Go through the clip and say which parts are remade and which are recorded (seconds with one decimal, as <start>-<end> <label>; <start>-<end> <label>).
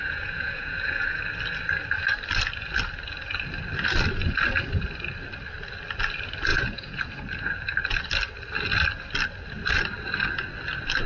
0.0-1.2 remade; 1.2-6.5 recorded; 6.5-7.1 remade; 7.1-11.1 recorded